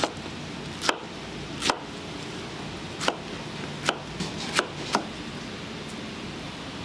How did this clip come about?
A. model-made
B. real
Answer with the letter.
B